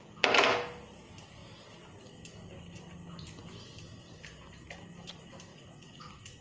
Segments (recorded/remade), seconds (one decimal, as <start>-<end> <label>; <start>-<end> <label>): 0.0-5.5 recorded; 5.5-6.4 remade